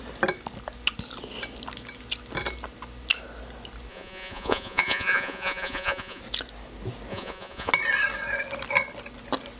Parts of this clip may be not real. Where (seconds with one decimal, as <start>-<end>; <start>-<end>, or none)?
3.9-6.2; 7.1-7.7